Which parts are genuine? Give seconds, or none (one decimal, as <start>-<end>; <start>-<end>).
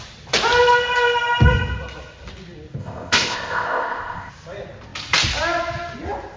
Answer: 0.0-2.8; 4.3-6.4